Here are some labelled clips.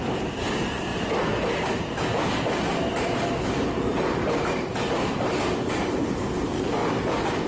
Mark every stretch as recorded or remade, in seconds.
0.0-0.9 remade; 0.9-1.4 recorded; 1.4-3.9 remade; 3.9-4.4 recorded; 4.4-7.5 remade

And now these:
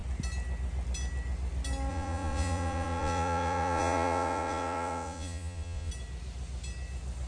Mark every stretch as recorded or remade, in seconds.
0.0-1.9 recorded; 1.9-5.9 remade; 5.9-7.3 recorded

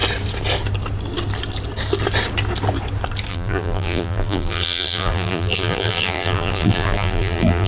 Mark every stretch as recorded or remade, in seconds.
0.0-3.3 recorded; 3.3-7.7 remade

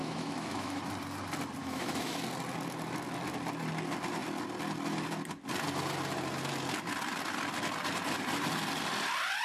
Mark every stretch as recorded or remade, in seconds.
0.0-0.8 remade; 0.8-1.6 recorded; 1.6-2.2 remade; 2.2-9.4 recorded

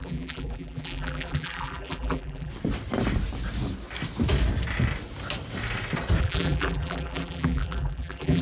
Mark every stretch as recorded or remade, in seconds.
0.0-2.5 remade; 2.5-6.2 recorded; 6.2-8.4 remade

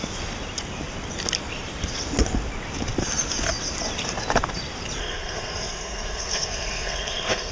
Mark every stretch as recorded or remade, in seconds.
0.0-5.0 recorded; 5.0-7.5 remade

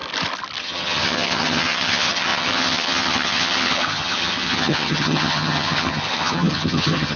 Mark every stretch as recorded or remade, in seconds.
0.0-0.6 recorded; 0.6-7.2 remade